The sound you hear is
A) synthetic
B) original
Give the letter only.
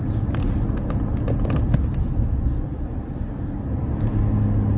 B